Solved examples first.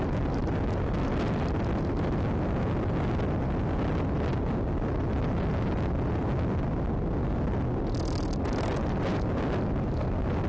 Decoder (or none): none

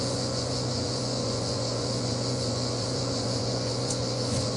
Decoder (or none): vocoder, Vocos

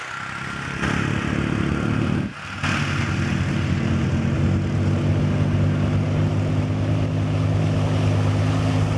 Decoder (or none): none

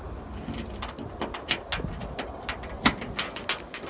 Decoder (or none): none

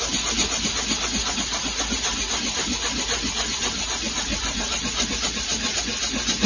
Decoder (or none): none